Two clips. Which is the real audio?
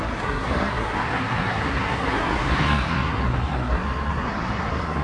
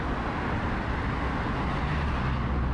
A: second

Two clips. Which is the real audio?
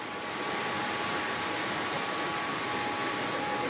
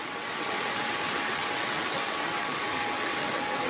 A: first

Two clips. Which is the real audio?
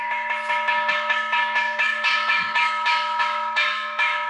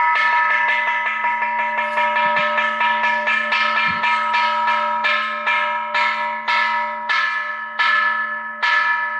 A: second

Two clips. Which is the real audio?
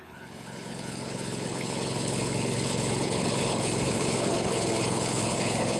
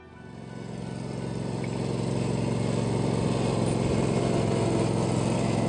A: second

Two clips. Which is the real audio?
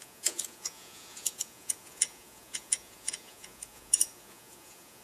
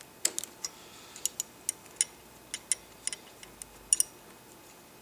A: second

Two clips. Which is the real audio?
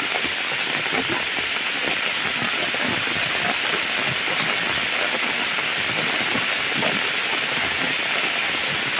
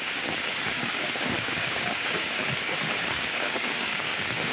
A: first